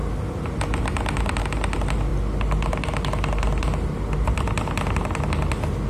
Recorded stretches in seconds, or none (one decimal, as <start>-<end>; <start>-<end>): 0.0-5.9